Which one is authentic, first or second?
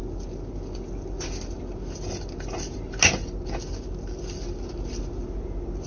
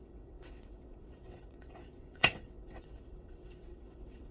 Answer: first